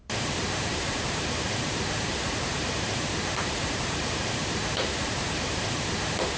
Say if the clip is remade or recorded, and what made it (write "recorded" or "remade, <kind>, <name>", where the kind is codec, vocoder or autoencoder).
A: remade, vocoder, BigVGAN v2